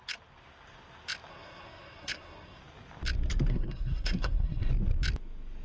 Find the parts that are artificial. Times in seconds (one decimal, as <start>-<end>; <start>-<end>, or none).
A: 1.3-2.6; 3.5-4.7